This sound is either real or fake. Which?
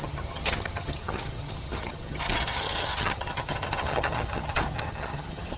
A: fake